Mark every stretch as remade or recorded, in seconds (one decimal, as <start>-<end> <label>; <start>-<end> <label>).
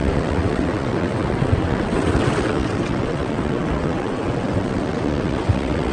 0.0-5.9 remade